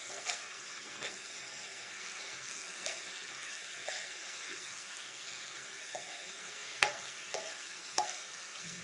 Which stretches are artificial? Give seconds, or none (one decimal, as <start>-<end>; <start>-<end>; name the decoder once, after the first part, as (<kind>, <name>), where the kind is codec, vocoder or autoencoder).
0.0-8.8 (codec, SNAC)